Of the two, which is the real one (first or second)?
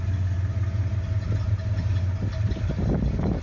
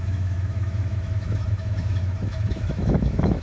first